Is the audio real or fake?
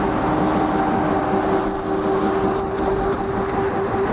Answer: real